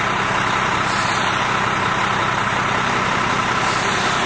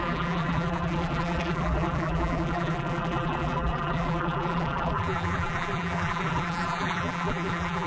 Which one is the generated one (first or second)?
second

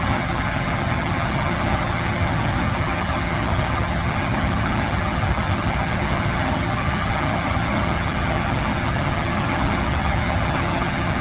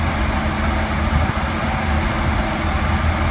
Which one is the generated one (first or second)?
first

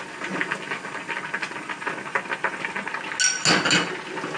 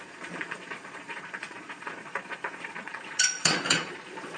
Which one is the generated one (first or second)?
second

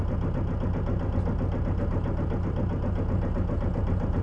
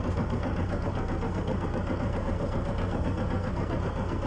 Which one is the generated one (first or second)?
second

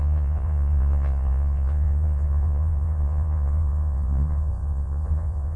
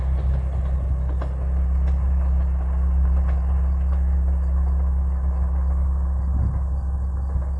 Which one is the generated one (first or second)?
first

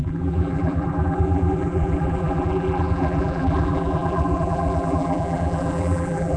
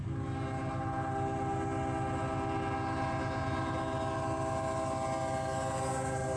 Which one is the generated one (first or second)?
first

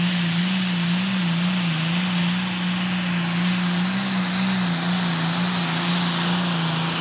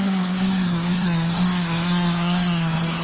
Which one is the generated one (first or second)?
second